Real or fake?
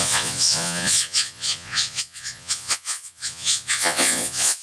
fake